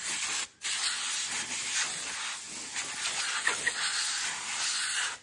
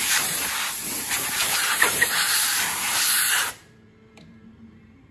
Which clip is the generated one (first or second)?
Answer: second